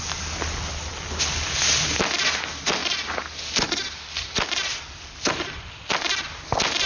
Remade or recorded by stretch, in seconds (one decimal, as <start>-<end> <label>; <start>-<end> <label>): 0.0-6.9 recorded

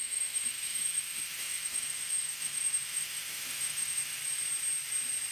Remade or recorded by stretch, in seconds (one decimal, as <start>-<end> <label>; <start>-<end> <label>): 0.0-4.2 remade; 4.2-5.3 recorded